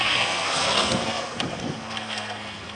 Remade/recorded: remade